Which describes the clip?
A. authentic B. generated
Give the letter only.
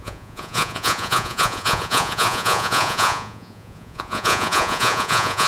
B